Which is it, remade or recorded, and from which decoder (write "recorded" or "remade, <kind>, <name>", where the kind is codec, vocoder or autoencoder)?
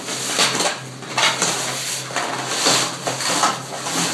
recorded